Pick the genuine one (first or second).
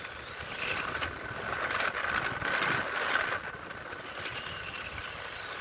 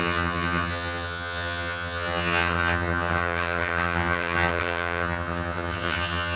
first